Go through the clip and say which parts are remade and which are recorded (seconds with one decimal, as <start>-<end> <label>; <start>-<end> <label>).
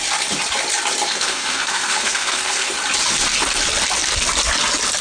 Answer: 0.0-1.1 recorded; 1.1-2.7 remade; 2.7-5.0 recorded